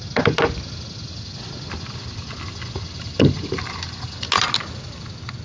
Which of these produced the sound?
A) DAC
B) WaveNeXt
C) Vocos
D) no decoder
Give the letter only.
D